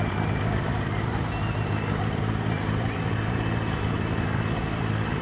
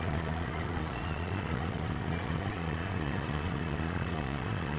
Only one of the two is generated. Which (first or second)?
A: second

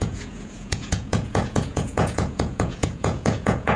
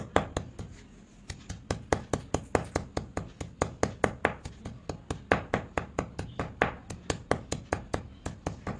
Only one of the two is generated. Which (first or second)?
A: first